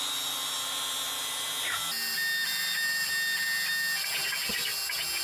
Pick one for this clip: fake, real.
real